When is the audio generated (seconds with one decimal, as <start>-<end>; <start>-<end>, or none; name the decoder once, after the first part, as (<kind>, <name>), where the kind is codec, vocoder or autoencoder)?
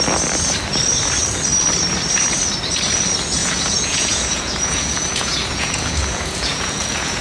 3.4-7.2 (vocoder, Vocos)